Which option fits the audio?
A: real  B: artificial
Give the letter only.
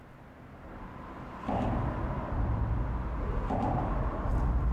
A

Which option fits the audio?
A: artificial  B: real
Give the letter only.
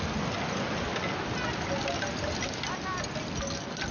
B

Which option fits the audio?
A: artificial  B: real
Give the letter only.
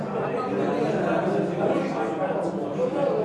B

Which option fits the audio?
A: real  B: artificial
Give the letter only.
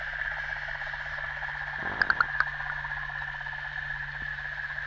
A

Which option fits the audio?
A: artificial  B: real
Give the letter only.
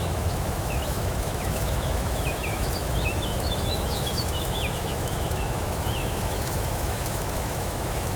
A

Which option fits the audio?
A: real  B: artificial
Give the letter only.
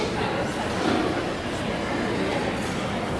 A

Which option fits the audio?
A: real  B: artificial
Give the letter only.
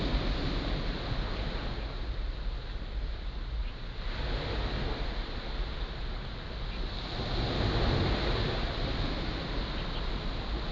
A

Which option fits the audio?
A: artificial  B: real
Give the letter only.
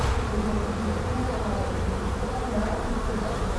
A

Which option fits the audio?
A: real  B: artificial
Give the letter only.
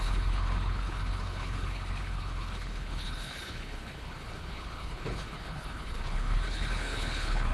B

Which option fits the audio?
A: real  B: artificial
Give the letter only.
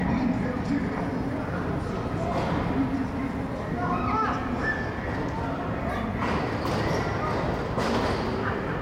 A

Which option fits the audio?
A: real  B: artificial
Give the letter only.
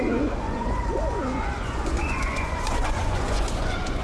B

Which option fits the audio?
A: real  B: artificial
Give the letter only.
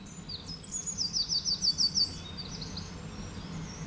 A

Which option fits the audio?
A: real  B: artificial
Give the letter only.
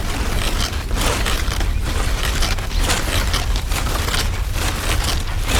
A